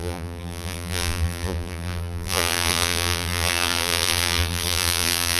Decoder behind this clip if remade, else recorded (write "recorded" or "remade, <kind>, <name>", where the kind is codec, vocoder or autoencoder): remade, vocoder, BigVGAN v2